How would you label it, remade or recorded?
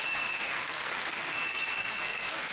remade